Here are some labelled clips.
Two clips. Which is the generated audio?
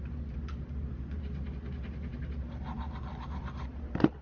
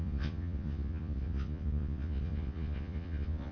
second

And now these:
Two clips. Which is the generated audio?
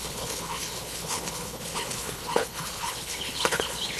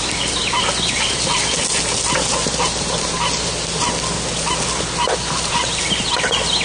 first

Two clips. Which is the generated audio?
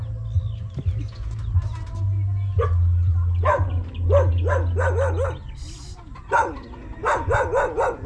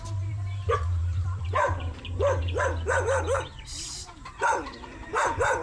second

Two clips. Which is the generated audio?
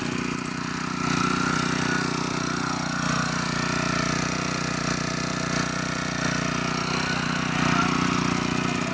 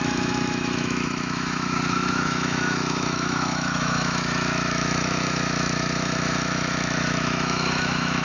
second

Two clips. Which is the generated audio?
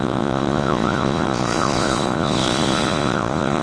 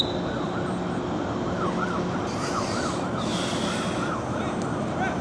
first